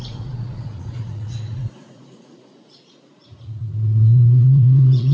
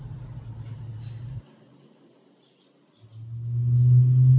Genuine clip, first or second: second